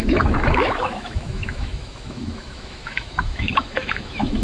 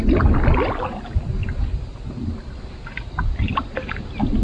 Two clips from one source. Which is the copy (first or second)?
first